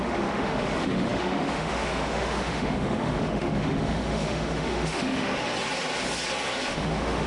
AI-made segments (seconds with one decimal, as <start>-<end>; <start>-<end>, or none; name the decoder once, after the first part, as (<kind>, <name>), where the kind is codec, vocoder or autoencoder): 0.0-5.3 (autoencoder, DAC-VAE); 6.7-7.3